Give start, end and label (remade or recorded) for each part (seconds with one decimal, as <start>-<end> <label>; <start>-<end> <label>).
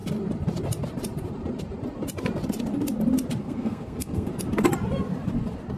0.0-3.4 recorded; 3.4-4.3 remade; 4.3-5.8 recorded